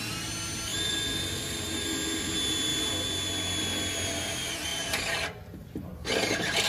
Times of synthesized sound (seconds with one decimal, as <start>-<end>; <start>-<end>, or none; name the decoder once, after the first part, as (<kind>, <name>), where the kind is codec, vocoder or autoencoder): 0.7-1.7 (vocoder, BigVGAN v2); 4.7-5.7